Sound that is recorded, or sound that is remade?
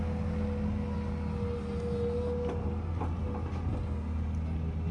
recorded